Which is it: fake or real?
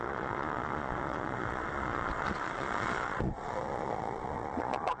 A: fake